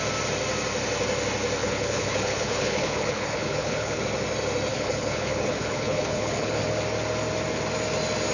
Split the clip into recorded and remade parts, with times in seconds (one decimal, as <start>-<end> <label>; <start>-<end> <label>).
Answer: 0.0-1.6 recorded; 1.6-4.0 remade; 4.0-4.7 recorded; 4.7-6.6 remade; 6.6-8.3 recorded